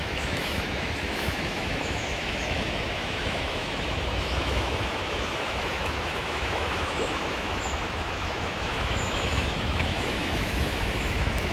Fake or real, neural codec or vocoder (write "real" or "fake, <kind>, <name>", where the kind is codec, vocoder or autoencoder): fake, autoencoder, DAC-VAE